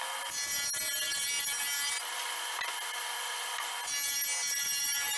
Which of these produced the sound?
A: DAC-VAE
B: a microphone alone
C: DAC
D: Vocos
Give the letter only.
B